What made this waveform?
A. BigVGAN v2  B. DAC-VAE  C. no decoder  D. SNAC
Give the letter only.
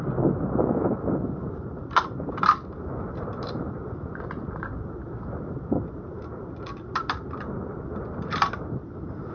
C